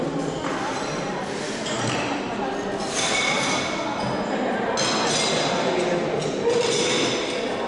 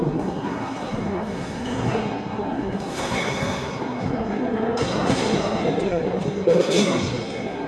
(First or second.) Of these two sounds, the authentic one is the first